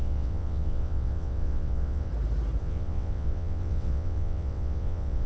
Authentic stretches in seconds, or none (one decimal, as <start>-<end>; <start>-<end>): 2.1-2.6